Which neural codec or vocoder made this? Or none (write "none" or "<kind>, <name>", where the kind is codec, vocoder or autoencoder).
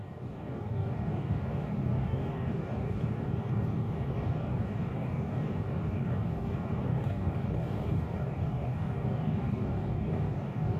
codec, DAC